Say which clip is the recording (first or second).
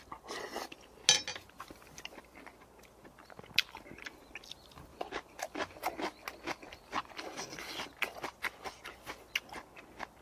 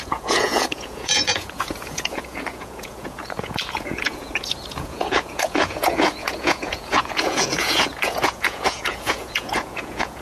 first